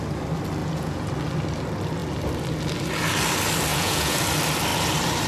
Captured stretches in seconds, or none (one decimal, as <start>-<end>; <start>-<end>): 0.0-0.6; 1.1-3.7; 4.2-5.3